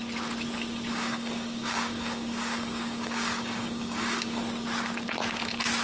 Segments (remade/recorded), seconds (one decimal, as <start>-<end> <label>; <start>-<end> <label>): 0.0-0.9 recorded; 0.9-4.4 remade; 4.4-5.8 recorded

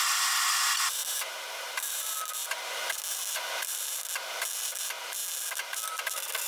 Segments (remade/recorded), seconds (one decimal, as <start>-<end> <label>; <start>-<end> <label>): 0.0-6.5 recorded

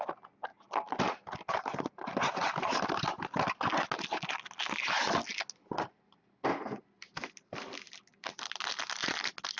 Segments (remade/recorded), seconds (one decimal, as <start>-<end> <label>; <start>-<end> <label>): 0.0-9.6 recorded

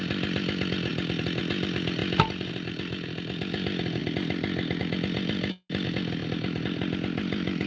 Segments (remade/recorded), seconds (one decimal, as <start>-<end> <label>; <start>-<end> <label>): 0.0-7.7 recorded

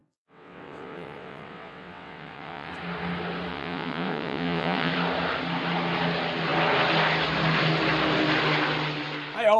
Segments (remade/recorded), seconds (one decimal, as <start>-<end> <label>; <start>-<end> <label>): 0.0-2.7 remade; 2.7-3.5 recorded; 3.5-4.9 remade; 4.9-9.6 recorded

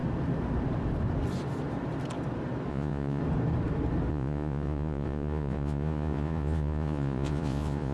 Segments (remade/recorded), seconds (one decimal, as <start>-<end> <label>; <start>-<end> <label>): 0.0-2.7 recorded; 2.7-3.2 remade; 3.2-4.1 recorded; 4.1-7.9 remade